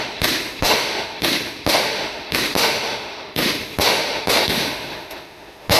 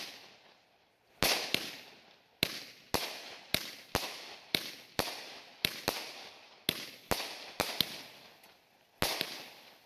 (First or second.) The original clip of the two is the second